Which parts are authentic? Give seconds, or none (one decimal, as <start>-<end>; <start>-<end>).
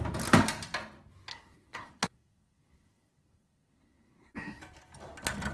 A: 0.0-1.3; 4.6-5.5